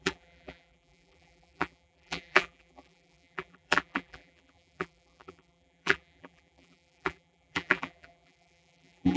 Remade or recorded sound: remade